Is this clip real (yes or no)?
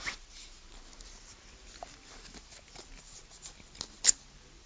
yes